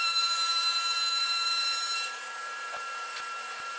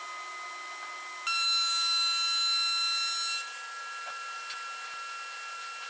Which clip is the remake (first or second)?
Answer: first